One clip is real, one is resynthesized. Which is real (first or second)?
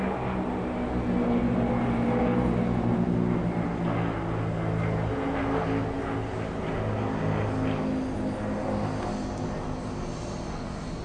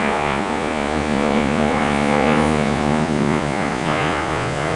first